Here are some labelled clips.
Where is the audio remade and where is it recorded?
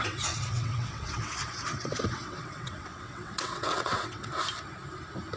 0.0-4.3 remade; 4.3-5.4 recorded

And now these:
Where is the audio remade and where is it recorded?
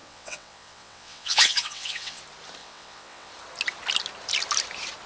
0.0-2.2 remade; 2.2-2.6 recorded; 2.6-3.3 remade; 3.3-5.1 recorded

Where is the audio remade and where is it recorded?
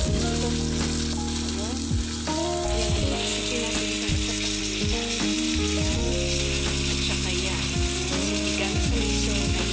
0.0-9.7 recorded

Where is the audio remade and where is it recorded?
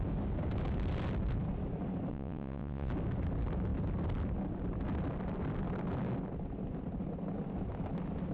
0.0-2.1 recorded; 2.1-2.9 remade; 2.9-8.3 recorded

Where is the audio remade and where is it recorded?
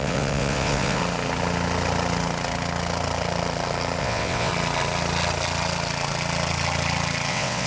0.0-1.0 remade; 1.0-4.0 recorded; 4.0-4.5 remade; 4.5-7.3 recorded; 7.3-7.7 remade